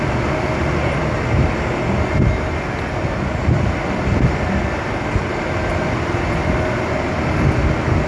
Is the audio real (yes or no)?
yes